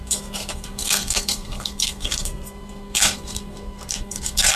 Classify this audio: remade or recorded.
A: remade